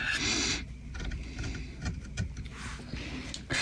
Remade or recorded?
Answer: recorded